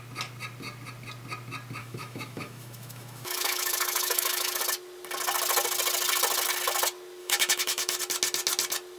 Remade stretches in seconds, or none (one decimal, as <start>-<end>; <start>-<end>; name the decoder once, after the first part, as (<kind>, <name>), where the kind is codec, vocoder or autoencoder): 1.8-4.6 (autoencoder, DAC-VAE); 7.2-8.0